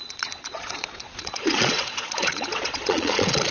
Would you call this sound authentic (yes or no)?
no